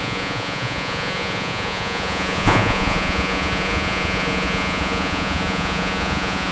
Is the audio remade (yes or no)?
yes